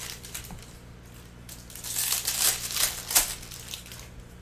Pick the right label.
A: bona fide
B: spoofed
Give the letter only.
A